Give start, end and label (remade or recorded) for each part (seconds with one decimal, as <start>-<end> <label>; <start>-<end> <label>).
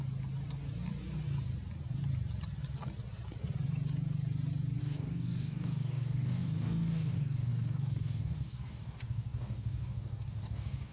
0.0-4.8 recorded; 4.8-10.9 remade